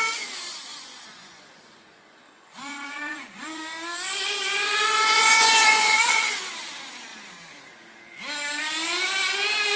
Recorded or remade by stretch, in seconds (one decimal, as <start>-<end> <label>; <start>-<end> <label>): 0.0-0.7 recorded; 0.7-3.6 remade; 3.6-4.1 recorded; 4.1-6.5 remade; 6.5-9.8 recorded